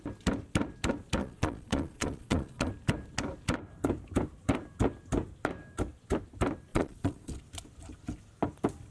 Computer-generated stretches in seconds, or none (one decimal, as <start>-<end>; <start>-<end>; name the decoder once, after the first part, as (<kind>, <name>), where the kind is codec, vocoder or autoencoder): 1.2-2.7 (vocoder, Vocos); 6.7-7.4